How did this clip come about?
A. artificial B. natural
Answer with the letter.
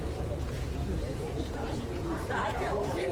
A